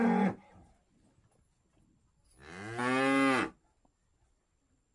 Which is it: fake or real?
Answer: real